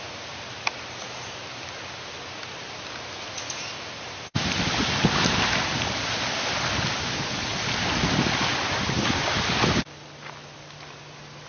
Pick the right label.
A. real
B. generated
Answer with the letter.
A